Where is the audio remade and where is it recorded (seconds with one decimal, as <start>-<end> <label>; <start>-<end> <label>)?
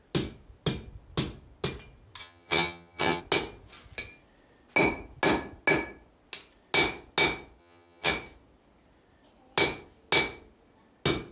0.0-2.2 recorded; 2.2-3.2 remade; 3.2-7.6 recorded; 7.6-8.1 remade; 8.1-11.3 recorded